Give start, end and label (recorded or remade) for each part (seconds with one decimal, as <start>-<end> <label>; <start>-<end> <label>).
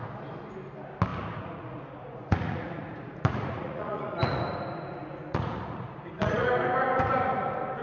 0.0-1.1 recorded; 1.1-4.4 remade; 4.4-5.3 recorded; 5.3-6.5 remade; 6.5-7.8 recorded